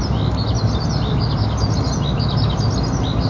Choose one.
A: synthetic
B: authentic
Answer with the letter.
B